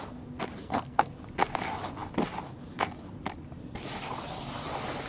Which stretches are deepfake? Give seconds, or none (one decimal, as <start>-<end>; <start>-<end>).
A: 0.6-1.1